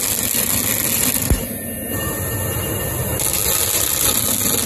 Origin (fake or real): real